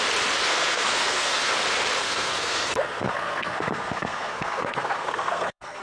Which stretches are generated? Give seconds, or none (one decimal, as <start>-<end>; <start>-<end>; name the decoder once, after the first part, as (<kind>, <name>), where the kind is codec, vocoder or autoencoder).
0.4-1.5 (codec, SNAC); 2.0-5.8